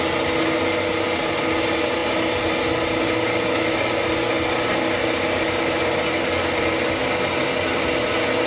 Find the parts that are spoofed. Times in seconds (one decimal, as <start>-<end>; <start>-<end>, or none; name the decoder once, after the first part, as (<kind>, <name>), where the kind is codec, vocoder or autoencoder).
none